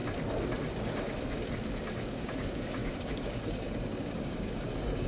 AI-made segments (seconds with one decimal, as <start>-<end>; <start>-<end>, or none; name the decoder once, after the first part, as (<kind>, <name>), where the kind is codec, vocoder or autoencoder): 2.1-5.1 (codec, DAC)